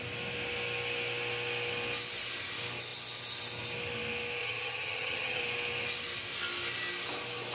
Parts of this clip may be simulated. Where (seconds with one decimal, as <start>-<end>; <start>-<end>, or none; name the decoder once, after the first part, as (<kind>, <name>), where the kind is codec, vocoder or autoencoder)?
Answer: 4.4-5.4 (vocoder, HiFi-GAN)